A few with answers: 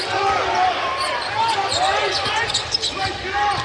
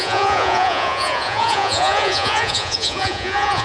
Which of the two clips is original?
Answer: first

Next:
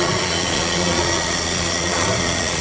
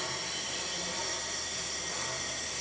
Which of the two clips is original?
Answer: second